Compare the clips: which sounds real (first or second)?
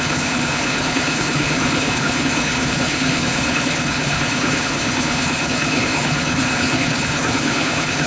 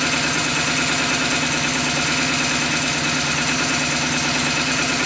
second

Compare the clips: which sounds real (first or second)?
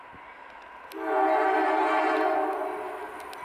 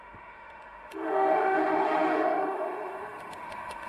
first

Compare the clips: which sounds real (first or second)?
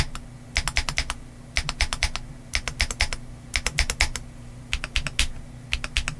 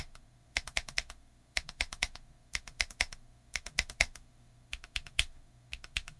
first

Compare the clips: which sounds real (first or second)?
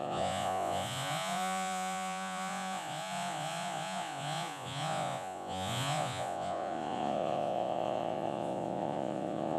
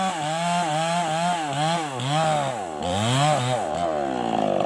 second